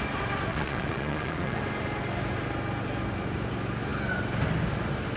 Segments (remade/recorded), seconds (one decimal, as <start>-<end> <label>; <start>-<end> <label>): 0.0-0.5 recorded; 0.5-1.6 remade; 1.6-5.2 recorded